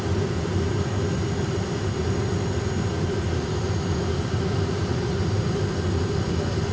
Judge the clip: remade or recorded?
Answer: recorded